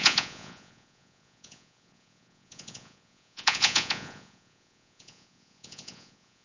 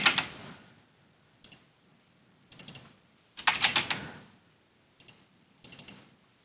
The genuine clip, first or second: second